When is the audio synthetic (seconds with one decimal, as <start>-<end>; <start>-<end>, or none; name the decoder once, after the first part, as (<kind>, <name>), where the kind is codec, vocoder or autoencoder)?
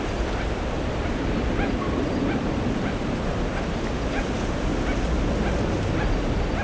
0.0-4.7 (vocoder, BigVGAN v2); 5.9-6.6